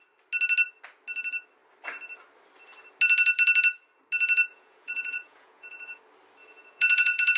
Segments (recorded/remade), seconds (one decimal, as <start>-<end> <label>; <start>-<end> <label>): 0.0-4.5 recorded; 4.5-6.0 remade; 6.0-6.4 recorded; 6.4-7.4 remade